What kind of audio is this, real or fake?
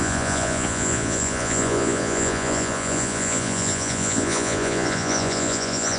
fake